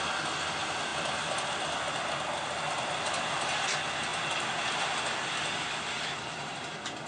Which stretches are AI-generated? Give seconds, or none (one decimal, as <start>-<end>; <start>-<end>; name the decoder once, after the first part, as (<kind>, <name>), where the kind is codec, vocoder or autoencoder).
none